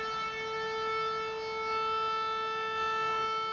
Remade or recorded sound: recorded